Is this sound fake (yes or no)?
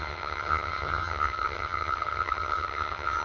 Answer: yes